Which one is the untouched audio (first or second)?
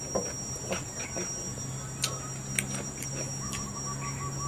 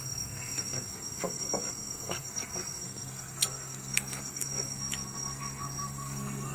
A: first